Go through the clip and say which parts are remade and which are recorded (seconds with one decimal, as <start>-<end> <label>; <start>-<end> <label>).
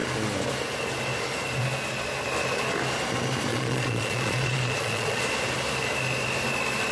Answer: 0.0-3.5 recorded; 3.5-5.2 remade; 5.2-6.9 recorded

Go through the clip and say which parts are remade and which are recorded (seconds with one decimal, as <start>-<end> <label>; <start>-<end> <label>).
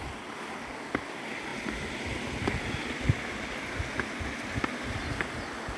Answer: 0.0-5.8 recorded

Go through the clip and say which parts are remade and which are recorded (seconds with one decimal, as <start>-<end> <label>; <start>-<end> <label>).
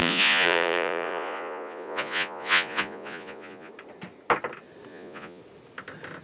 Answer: 0.0-3.7 remade; 3.7-4.9 recorded; 4.9-5.4 remade; 5.4-6.2 recorded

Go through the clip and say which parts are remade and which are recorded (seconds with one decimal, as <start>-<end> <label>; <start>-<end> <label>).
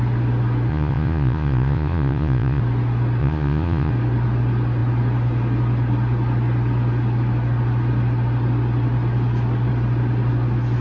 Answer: 0.0-0.7 recorded; 0.7-2.6 remade; 2.6-3.2 recorded; 3.2-3.9 remade; 3.9-10.8 recorded